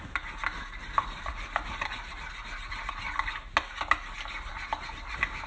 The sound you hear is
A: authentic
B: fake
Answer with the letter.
A